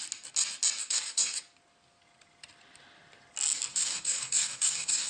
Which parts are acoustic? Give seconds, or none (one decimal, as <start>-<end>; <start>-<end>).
0.0-0.8; 1.4-3.7